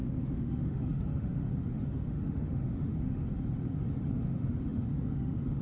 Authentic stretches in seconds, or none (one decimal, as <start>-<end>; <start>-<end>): 3.2-4.1